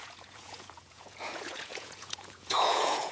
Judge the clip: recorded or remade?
remade